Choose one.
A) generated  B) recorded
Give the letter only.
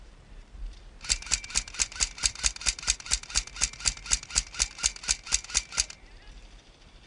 A